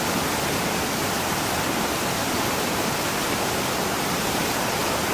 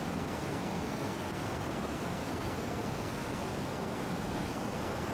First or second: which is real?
first